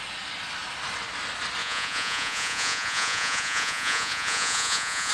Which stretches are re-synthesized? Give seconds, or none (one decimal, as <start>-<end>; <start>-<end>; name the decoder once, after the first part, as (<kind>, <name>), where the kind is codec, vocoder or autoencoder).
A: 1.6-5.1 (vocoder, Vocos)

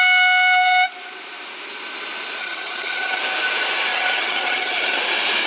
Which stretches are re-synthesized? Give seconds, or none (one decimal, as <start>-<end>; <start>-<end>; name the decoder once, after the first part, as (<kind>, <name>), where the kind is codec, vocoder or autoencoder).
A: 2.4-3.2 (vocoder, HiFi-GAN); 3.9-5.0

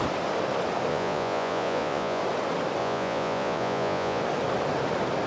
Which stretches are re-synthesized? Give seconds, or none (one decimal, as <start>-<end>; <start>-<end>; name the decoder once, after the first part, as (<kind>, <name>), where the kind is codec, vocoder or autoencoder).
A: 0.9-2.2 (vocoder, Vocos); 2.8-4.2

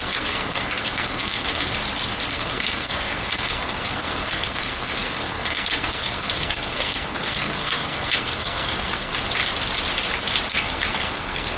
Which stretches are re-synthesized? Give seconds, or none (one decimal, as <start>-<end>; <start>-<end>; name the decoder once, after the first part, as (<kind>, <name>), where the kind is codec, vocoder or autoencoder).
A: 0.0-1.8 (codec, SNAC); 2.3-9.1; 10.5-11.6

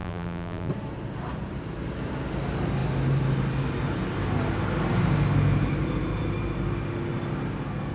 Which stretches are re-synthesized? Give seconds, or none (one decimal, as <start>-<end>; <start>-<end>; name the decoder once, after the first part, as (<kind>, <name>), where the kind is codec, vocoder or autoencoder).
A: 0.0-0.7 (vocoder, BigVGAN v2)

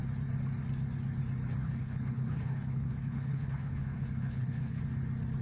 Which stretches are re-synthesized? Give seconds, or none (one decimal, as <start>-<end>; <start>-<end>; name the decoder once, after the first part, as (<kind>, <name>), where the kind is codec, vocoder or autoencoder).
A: 1.6-4.8 (codec, HILCodec)